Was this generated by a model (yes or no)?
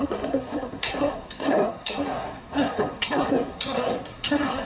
yes